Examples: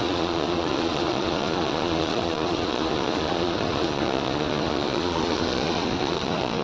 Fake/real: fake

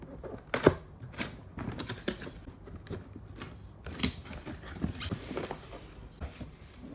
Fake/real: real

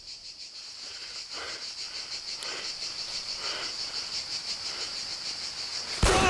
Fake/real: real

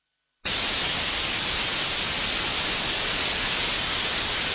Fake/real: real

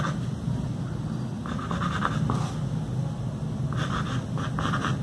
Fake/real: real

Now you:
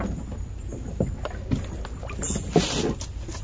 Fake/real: real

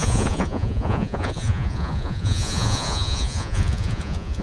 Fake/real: fake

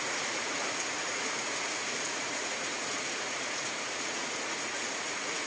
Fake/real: fake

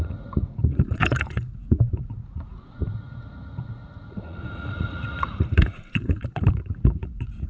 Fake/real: fake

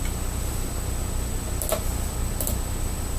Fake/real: real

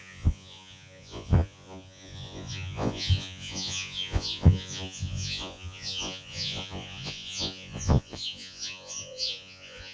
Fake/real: fake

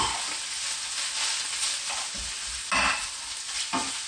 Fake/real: real